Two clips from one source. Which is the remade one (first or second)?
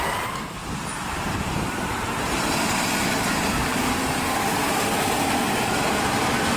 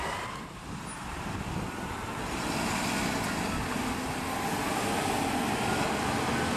first